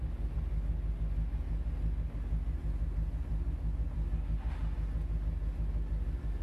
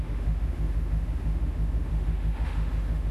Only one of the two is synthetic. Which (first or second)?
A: second